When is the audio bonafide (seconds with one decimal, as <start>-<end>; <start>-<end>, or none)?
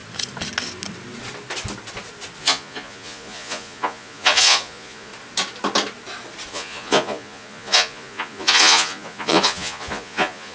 0.0-2.4; 5.1-6.5